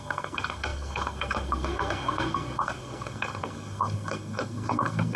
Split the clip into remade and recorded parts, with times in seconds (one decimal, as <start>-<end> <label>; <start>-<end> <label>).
0.0-5.2 remade